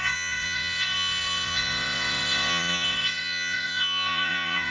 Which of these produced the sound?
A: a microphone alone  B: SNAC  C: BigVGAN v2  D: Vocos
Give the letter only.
D